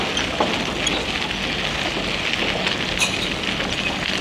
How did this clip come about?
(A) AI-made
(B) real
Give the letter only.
B